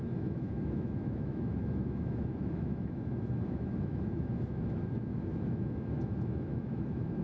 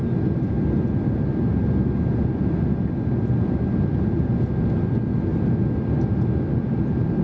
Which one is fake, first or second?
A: first